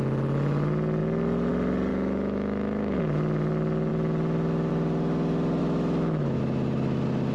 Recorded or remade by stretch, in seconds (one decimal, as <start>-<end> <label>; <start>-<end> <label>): 0.0-1.9 recorded; 1.9-3.0 remade; 3.0-5.6 recorded; 5.6-6.4 remade; 6.4-7.3 recorded